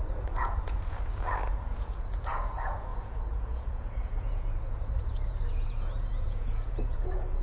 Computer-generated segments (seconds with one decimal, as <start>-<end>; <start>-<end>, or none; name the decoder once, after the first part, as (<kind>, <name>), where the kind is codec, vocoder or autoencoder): 0.0-7.4 (vocoder, Vocos)